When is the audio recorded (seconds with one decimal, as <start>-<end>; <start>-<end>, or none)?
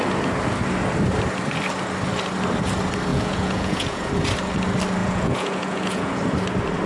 0.0-3.1; 4.1-5.0; 6.2-6.9